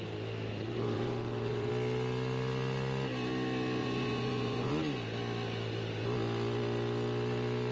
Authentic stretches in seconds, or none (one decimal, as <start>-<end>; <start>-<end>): 0.0-0.5; 1.7-3.8; 4.7-7.7